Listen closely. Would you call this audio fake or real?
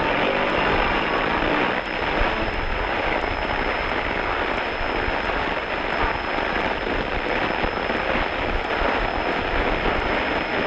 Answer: fake